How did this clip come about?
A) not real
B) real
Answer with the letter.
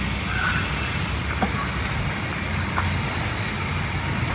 B